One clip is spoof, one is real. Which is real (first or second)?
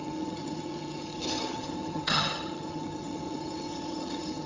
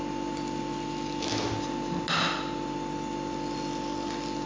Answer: second